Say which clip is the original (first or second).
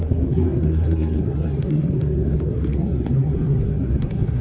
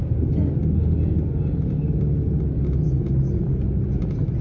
second